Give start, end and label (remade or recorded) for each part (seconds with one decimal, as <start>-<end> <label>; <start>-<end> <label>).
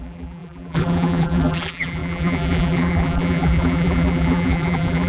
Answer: 0.0-5.1 remade